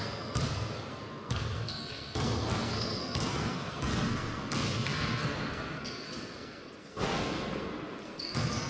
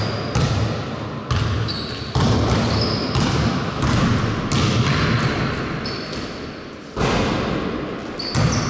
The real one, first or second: second